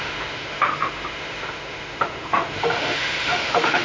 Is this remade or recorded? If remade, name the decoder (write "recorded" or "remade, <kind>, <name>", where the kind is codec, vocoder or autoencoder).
remade, autoencoder, DAC-VAE